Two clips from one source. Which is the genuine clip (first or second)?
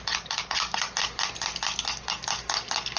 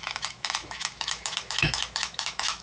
first